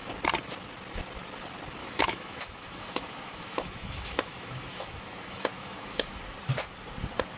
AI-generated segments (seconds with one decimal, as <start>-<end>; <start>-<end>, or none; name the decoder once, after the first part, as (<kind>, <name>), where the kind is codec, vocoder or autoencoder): 1.8-6.2 (autoencoder, DAC-VAE)